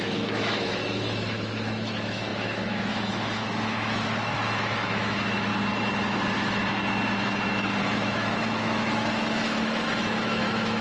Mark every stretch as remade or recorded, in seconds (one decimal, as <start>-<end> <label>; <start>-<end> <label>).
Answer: 0.0-5.5 remade; 5.5-7.8 recorded; 7.8-10.8 remade